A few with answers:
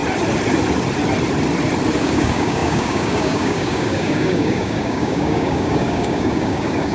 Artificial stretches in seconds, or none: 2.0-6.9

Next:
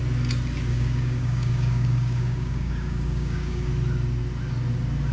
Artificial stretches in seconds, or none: 0.7-3.7

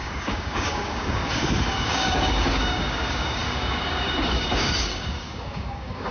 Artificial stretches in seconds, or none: 0.0-6.1

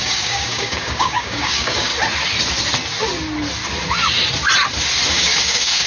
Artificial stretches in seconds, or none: 0.0-1.9; 5.1-5.9